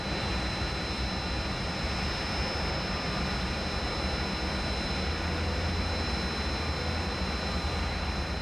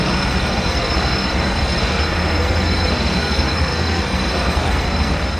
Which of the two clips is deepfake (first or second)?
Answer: second